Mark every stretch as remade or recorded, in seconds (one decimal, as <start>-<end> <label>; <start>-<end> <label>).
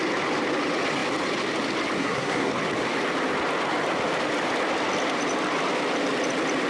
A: 0.0-2.0 recorded; 2.0-2.5 remade; 2.5-6.7 recorded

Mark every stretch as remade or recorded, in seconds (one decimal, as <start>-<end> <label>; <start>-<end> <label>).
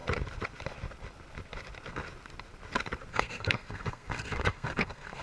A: 0.0-3.1 recorded; 3.1-5.2 remade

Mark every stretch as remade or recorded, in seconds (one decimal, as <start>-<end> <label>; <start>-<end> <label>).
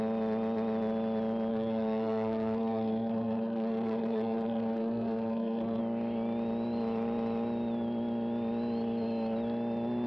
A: 0.0-1.5 recorded; 1.5-5.8 remade; 5.8-10.1 recorded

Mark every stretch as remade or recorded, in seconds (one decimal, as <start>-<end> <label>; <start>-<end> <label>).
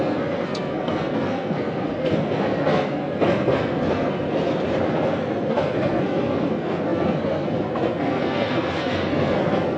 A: 0.0-4.4 remade; 4.4-4.9 recorded; 4.9-9.8 remade